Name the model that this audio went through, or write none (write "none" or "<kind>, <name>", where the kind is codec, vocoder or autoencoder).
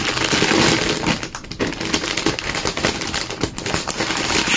vocoder, BigVGAN v2